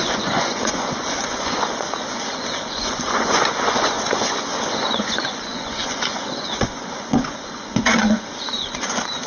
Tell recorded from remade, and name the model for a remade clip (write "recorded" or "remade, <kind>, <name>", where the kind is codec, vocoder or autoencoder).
remade, vocoder, Vocos